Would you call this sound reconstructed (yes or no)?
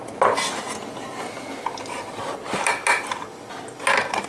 no